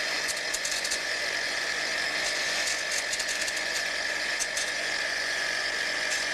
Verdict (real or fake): fake